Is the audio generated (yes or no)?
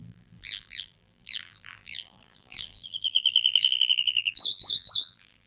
yes